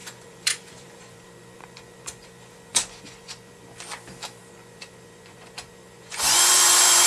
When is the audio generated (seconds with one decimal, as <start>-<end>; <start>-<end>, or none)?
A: 0.0-3.6; 4.4-7.1